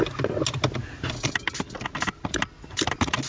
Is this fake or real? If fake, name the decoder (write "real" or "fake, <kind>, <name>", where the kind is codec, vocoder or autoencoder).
real